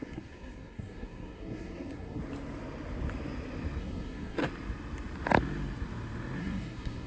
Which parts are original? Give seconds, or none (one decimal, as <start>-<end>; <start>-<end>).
2.2-3.8; 4.4-6.4